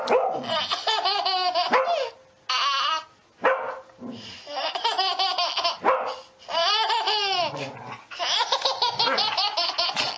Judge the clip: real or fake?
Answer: real